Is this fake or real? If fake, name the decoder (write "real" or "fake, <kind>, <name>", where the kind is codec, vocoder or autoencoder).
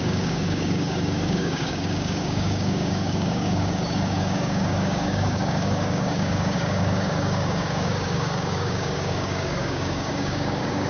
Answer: fake, codec, DAC